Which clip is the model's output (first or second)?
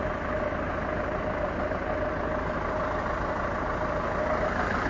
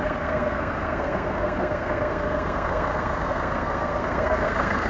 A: second